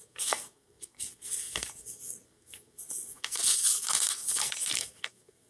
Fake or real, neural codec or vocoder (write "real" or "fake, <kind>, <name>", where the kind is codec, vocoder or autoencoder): fake, codec, SNAC